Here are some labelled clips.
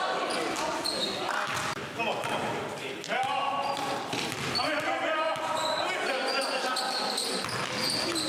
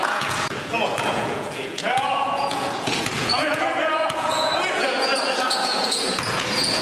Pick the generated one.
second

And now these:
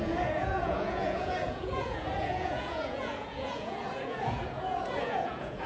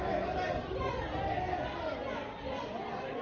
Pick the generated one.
first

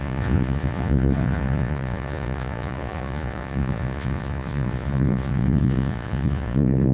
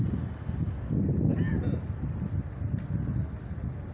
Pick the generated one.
first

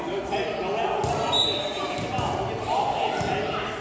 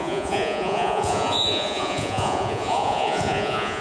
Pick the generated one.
second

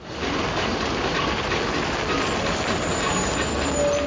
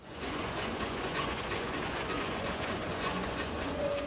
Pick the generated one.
second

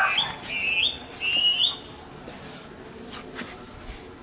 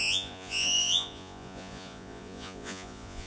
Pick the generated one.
second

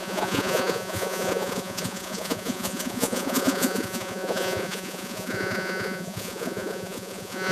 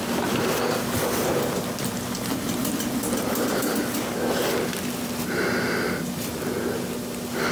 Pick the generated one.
first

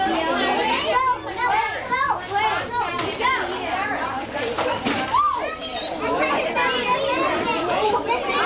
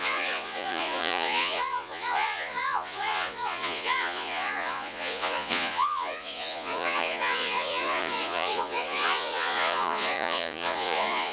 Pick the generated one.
second